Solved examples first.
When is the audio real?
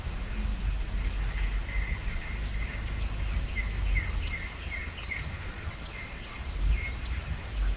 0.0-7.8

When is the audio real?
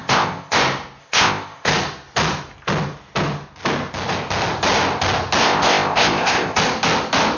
0.6-1.0; 1.7-5.4; 6.6-7.4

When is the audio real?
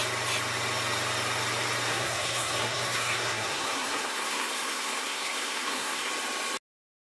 0.0-1.9; 6.1-7.0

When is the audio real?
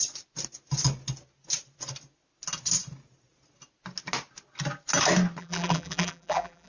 0.0-5.4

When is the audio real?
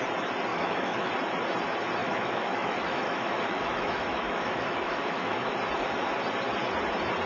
0.0-0.5; 1.1-2.0; 5.5-7.3